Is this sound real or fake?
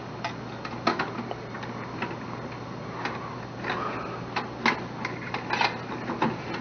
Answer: real